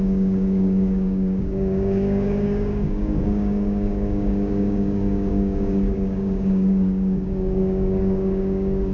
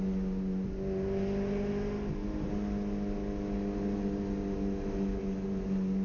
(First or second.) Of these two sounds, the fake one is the first